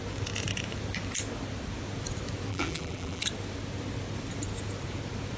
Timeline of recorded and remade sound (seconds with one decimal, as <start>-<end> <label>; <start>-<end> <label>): 0.0-2.5 recorded; 2.5-3.2 remade; 3.2-5.4 recorded